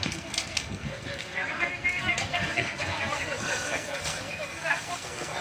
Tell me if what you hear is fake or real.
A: fake